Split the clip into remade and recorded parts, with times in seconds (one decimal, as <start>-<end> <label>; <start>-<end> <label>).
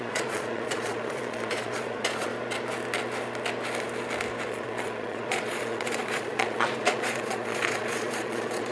0.0-2.3 remade; 2.3-4.5 recorded; 4.5-8.7 remade